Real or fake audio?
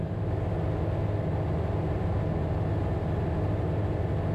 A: real